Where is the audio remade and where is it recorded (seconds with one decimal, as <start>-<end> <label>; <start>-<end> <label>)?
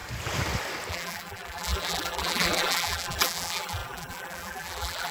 0.0-0.9 recorded; 0.9-5.1 remade